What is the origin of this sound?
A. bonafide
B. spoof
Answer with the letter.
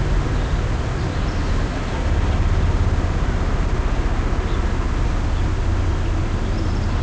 A